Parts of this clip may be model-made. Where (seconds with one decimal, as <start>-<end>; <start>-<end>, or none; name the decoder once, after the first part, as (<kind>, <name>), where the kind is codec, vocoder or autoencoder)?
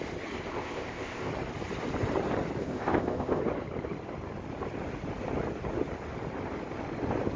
0.5-1.3 (codec, ZipCodec); 2.6-3.4